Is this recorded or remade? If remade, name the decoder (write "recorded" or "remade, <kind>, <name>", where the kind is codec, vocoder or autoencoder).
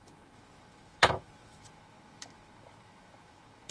remade, autoencoder, DAC-VAE